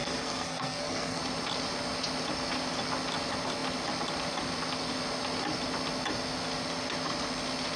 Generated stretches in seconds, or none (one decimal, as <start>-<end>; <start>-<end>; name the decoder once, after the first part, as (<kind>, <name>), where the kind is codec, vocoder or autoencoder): 0.0-1.2 (codec, SNAC)